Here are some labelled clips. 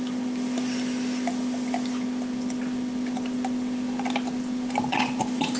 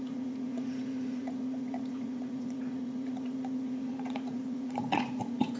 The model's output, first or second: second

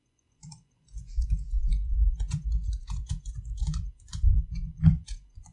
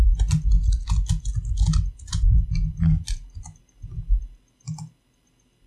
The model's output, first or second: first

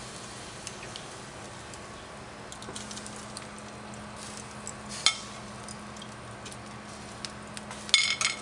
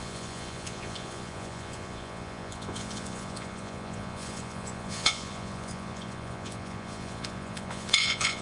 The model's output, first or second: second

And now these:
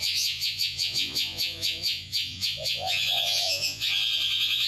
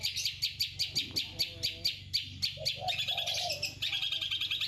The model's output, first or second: first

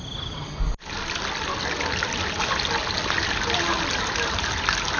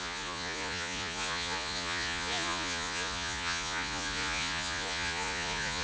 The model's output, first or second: second